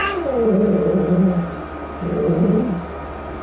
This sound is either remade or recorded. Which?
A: recorded